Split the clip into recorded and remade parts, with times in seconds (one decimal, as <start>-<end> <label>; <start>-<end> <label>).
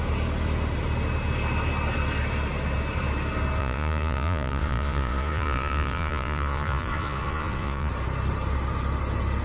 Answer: 0.0-3.6 recorded; 3.6-7.9 remade; 7.9-9.4 recorded